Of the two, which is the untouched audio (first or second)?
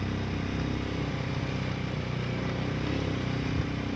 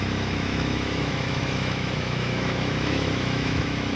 first